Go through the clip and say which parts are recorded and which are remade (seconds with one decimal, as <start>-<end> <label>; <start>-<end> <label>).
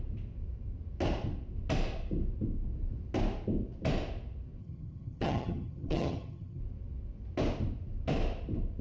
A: 0.0-4.6 recorded; 4.6-6.6 remade; 6.6-8.8 recorded